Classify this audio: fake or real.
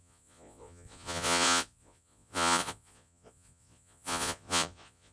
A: fake